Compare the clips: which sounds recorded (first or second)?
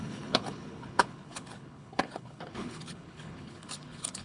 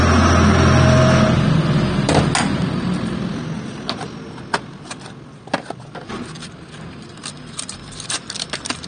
second